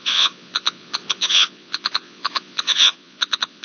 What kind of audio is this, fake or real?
fake